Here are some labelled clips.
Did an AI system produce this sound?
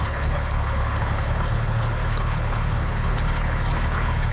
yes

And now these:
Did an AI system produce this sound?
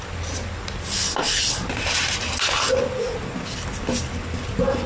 no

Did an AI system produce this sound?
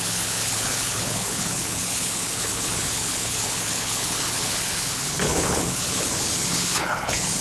yes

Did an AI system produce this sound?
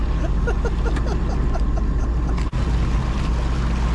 no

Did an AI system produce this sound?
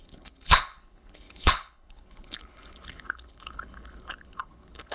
yes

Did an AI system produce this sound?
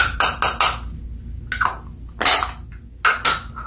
no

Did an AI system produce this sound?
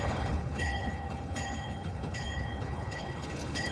yes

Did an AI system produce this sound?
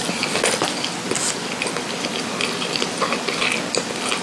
no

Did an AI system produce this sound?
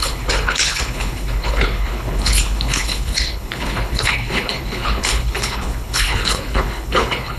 yes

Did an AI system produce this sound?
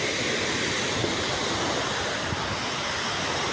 no